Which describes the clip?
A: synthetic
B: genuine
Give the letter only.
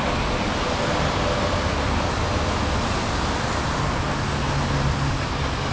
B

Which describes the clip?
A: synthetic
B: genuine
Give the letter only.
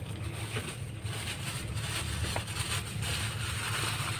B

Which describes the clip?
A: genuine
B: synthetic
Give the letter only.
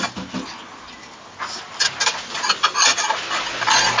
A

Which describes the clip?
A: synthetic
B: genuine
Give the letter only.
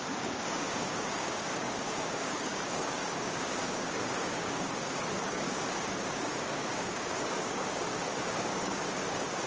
A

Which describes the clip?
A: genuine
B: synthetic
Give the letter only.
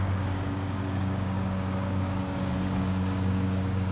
B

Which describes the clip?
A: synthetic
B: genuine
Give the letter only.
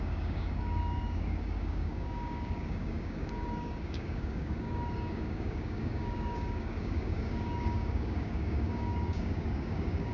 A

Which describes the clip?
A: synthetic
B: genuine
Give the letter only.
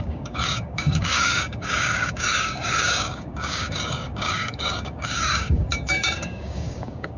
A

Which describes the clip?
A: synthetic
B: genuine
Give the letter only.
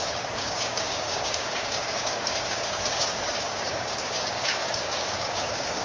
A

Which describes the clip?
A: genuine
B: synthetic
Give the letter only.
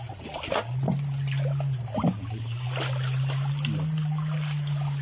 A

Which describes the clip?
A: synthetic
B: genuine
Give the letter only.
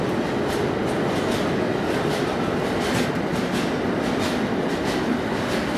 B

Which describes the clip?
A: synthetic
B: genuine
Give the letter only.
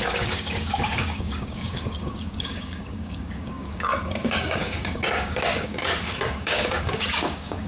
A